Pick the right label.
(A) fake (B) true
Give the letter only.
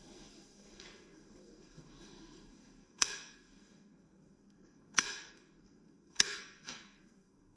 A